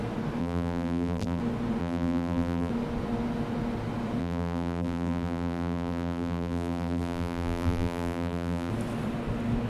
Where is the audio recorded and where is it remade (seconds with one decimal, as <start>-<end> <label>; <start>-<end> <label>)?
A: 0.0-0.4 recorded; 0.4-1.4 remade; 1.4-1.8 recorded; 1.8-2.7 remade; 2.7-4.2 recorded; 4.2-8.7 remade; 8.7-9.7 recorded